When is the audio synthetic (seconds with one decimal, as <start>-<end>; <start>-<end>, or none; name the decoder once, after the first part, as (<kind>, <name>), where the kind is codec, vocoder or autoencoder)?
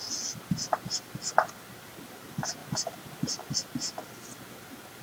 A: none